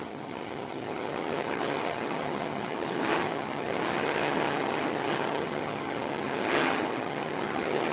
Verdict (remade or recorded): remade